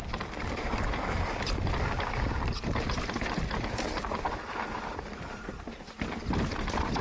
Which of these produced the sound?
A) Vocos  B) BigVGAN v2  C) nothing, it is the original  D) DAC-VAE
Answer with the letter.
B